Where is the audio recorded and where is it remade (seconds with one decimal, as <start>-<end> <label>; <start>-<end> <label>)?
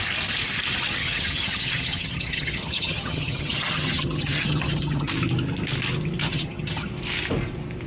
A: 0.0-1.0 recorded; 1.0-5.1 remade; 5.1-6.2 recorded; 6.2-6.9 remade; 6.9-7.9 recorded